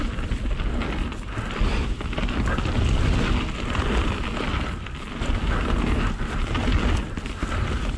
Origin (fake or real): real